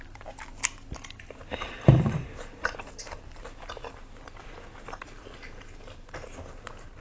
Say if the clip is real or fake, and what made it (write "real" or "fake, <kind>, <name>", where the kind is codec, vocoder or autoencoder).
real